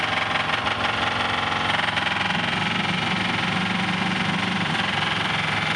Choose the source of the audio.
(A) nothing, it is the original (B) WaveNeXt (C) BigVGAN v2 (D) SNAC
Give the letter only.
A